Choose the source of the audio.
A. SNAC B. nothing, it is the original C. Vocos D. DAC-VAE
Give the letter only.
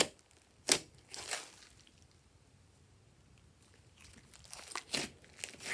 B